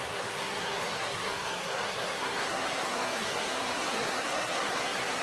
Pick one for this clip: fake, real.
fake